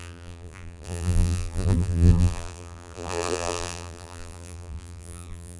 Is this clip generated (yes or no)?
yes